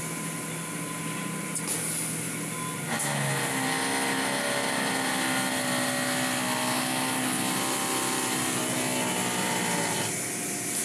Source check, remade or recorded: recorded